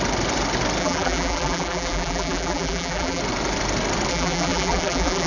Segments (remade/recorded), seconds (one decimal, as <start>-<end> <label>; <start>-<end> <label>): 0.0-0.8 recorded; 0.8-3.2 remade; 3.2-4.1 recorded; 4.1-5.3 remade